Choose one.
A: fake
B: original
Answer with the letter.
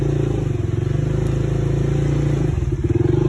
B